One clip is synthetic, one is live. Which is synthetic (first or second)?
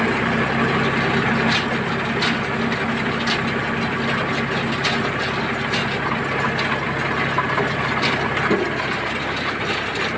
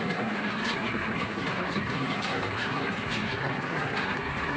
second